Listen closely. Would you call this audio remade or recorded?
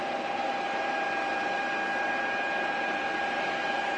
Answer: recorded